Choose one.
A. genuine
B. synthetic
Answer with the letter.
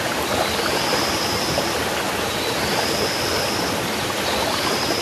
A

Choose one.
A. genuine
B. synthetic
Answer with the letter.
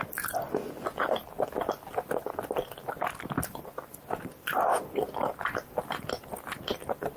A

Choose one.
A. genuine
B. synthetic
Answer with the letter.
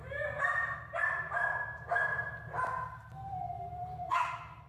A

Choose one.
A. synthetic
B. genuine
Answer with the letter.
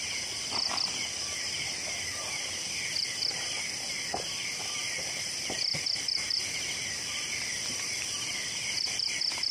A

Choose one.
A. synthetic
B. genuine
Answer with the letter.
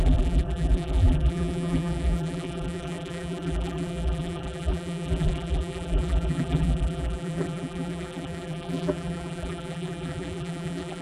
A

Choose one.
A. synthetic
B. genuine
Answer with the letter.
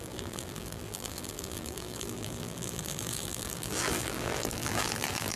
A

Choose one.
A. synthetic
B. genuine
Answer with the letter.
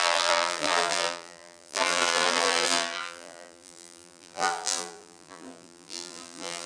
A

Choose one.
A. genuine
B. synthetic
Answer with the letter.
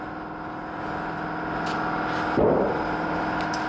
A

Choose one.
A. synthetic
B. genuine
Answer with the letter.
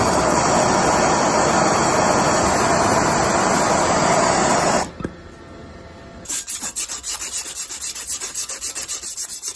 B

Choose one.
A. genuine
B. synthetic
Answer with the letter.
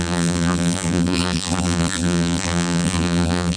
B